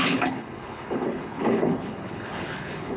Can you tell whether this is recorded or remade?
remade